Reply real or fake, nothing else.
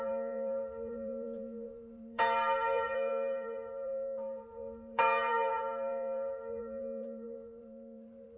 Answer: fake